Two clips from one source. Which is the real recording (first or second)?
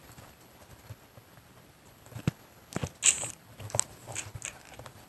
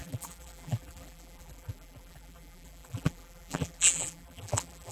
first